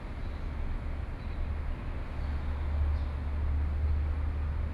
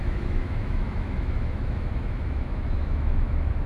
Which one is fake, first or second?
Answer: second